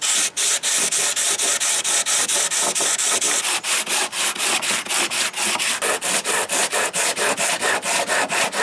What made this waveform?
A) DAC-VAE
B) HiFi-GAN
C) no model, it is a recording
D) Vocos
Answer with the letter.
C